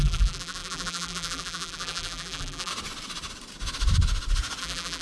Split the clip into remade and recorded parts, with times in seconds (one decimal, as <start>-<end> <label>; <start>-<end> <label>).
0.0-2.7 remade; 2.7-4.6 recorded; 4.6-5.0 remade